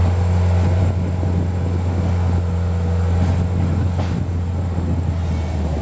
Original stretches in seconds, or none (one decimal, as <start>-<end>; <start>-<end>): 0.0-5.8